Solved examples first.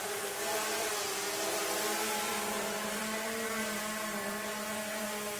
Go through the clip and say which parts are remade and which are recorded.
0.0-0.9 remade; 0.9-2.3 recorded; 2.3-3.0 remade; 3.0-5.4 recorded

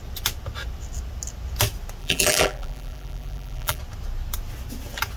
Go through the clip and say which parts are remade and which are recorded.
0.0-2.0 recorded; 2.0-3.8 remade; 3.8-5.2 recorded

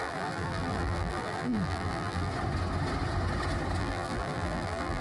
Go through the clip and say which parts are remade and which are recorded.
0.0-2.3 remade; 2.3-3.8 recorded; 3.8-5.0 remade

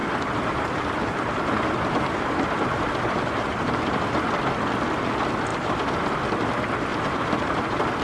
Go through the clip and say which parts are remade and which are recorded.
0.0-4.3 remade; 4.3-5.5 recorded; 5.5-6.2 remade; 6.2-6.9 recorded; 6.9-8.0 remade

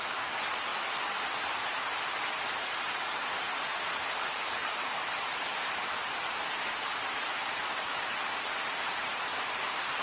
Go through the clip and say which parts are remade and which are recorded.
0.0-4.6 recorded; 4.6-9.0 remade; 9.0-10.0 recorded

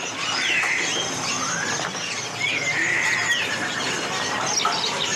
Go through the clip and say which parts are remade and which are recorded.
0.0-5.2 recorded

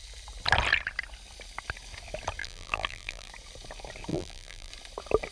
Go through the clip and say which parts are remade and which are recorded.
0.0-2.4 recorded; 2.4-3.3 remade; 3.3-4.1 recorded; 4.1-4.7 remade; 4.7-5.3 recorded